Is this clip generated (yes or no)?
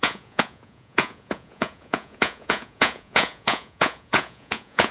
yes